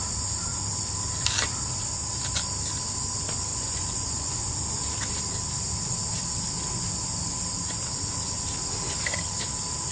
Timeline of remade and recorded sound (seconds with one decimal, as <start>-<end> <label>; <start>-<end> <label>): 0.0-3.5 recorded; 3.5-4.6 remade; 4.6-9.9 recorded